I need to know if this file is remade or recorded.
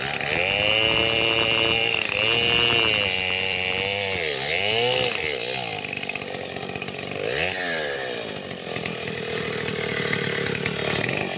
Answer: recorded